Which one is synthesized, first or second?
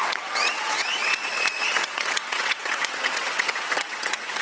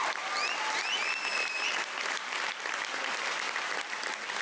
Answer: first